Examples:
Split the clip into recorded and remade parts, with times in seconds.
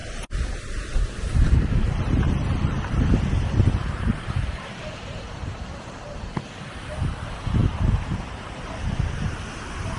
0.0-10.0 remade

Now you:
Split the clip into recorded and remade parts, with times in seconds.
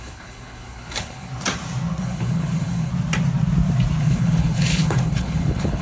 0.0-1.3 remade; 1.3-2.0 recorded; 2.0-2.9 remade; 2.9-4.0 recorded; 4.0-5.8 remade